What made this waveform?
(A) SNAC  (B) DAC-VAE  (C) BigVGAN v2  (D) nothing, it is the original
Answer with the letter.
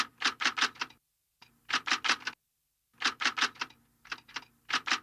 D